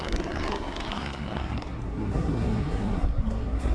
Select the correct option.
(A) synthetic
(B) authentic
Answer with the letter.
A